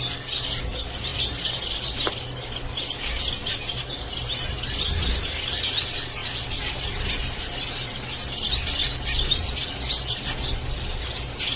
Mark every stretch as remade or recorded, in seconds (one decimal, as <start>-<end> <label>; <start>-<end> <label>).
0.0-11.6 recorded